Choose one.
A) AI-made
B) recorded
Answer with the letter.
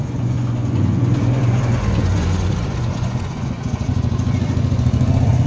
A